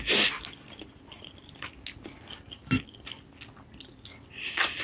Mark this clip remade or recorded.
recorded